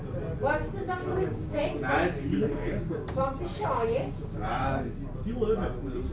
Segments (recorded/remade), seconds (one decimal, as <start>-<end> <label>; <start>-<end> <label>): 0.0-1.0 recorded; 1.0-1.6 remade; 1.6-2.3 recorded; 2.3-2.9 remade; 2.9-3.6 recorded; 3.6-4.8 remade; 4.8-6.1 recorded